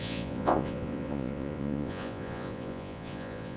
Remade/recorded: remade